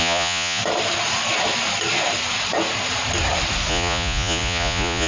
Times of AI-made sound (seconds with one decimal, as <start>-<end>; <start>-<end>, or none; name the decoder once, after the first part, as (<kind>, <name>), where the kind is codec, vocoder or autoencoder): 0.0-0.6 (vocoder, Vocos); 3.7-5.1